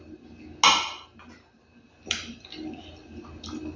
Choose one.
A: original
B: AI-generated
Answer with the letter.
A